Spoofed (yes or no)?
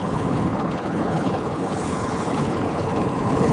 yes